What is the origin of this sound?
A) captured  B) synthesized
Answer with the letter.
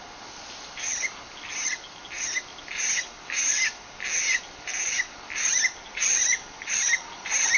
A